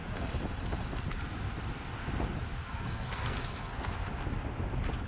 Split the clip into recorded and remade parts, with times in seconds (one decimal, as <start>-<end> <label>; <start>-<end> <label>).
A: 0.0-2.6 recorded; 2.6-3.9 remade; 3.9-5.1 recorded